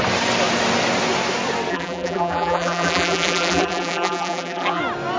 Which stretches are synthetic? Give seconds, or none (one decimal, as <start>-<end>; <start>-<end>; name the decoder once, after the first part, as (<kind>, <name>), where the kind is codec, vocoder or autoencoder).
1.7-4.8 (vocoder, BigVGAN v2)